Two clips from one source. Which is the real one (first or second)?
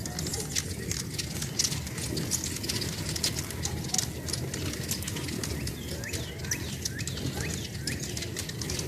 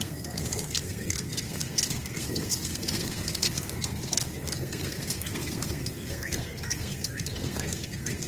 first